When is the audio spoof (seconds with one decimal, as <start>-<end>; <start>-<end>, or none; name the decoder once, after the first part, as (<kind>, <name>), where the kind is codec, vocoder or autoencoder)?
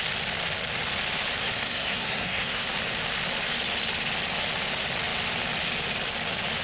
1.4-2.7 (codec, SNAC)